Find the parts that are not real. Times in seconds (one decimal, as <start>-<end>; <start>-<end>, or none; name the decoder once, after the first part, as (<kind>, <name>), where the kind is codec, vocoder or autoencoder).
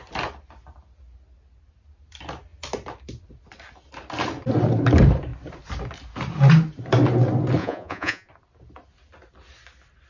7.6-8.3 (vocoder, Vocos)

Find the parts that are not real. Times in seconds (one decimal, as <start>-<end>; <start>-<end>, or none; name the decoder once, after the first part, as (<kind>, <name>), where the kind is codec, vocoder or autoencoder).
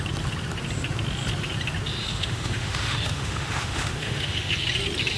2.1-4.5 (autoencoder, DAC-VAE)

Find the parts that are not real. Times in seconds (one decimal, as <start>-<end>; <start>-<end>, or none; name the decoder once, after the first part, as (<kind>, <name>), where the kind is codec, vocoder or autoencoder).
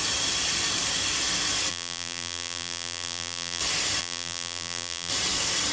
1.7-3.6 (vocoder, BigVGAN v2); 4.0-5.1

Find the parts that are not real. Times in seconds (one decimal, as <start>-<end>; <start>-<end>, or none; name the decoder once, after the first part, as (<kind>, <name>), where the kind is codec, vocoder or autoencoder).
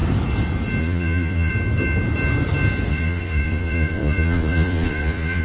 0.8-1.5 (vocoder, Vocos); 2.9-5.4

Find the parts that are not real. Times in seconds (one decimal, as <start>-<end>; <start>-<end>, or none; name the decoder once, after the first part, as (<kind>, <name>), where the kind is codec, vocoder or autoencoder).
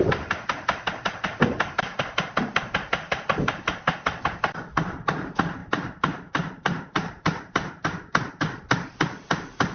5.6-8.4 (vocoder, BigVGAN v2)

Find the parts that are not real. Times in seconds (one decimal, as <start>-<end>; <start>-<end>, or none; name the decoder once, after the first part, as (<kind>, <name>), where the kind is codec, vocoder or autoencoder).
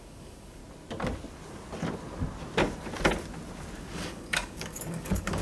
0.0-0.6 (codec, DAC); 3.8-5.4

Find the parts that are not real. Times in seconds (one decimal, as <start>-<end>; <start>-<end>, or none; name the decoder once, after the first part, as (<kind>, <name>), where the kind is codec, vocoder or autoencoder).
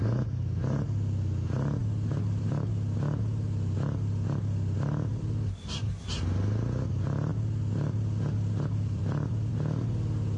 1.8-2.7 (vocoder, BigVGAN v2); 5.1-5.8; 7.3-9.5